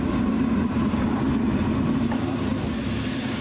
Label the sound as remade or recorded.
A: recorded